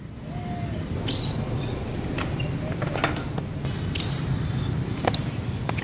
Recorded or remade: recorded